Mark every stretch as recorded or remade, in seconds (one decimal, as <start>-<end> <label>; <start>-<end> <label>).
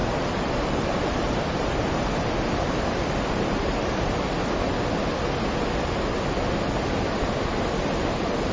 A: 0.0-4.1 remade; 4.1-8.5 recorded